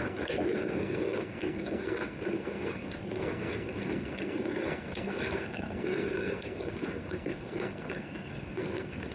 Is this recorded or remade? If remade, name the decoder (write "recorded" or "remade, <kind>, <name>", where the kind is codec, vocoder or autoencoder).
remade, codec, SNAC